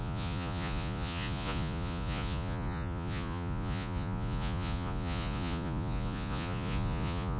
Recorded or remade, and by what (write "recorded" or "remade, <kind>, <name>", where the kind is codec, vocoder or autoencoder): remade, vocoder, Vocos